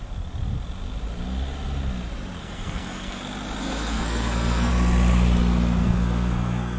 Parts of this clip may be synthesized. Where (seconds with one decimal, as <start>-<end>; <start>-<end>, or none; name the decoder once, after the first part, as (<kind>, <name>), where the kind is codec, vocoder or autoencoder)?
2.4-3.2 (codec, SNAC); 3.6-4.7; 5.8-6.8